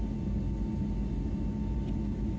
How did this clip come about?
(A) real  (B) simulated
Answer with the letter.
A